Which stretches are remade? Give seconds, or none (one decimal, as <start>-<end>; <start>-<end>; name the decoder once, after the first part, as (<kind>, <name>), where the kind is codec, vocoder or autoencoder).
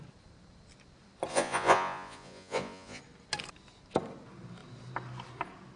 1.3-3.0 (vocoder, Vocos)